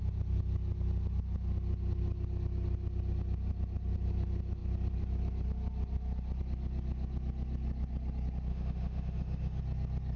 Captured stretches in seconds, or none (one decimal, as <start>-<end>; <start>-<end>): 0.0-8.5; 9.6-10.2